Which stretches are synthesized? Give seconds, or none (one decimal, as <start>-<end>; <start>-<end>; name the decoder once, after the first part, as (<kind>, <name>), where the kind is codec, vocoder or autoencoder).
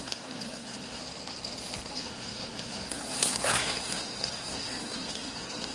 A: 0.0-1.0 (codec, SNAC); 1.9-5.7